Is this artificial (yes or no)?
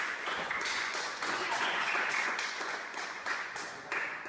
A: yes